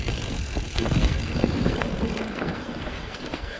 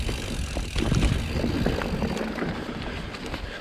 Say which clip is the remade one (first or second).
first